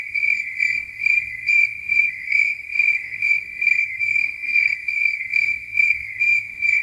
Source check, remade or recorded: remade